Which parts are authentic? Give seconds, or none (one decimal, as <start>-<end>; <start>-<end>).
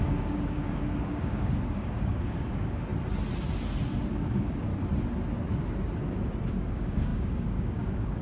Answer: 2.9-4.1; 4.7-6.5